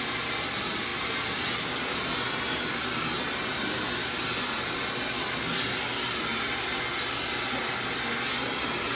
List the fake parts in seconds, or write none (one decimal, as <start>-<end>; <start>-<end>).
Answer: none